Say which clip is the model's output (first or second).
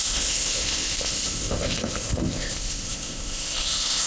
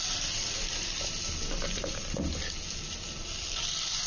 first